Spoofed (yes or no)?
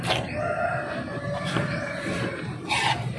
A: no